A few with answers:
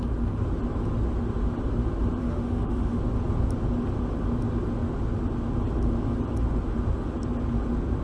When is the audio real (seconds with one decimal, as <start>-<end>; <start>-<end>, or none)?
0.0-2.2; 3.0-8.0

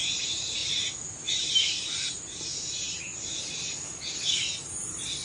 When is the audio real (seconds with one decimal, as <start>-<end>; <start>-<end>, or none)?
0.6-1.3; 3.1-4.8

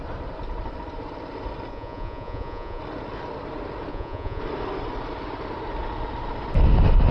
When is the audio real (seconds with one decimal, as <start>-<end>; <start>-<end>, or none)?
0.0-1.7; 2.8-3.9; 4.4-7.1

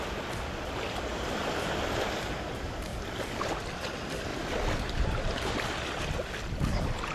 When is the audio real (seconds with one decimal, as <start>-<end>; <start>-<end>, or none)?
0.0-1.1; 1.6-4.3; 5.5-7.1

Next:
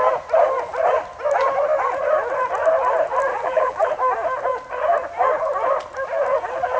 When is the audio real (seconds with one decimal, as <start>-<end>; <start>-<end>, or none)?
0.0-3.3; 3.9-6.8